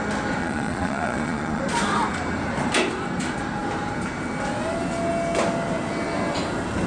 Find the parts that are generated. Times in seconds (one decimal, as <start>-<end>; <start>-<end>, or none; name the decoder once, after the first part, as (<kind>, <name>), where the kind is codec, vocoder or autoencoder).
0.4-1.6 (vocoder, Vocos)